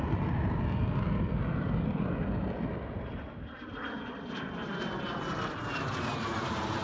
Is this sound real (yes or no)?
yes